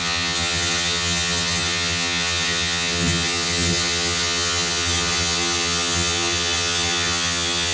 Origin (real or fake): fake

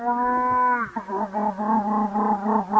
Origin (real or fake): real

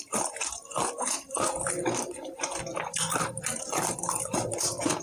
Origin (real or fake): fake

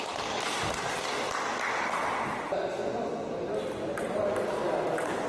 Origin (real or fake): real